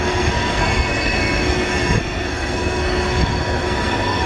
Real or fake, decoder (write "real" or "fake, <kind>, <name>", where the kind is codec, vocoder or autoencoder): fake, codec, SNAC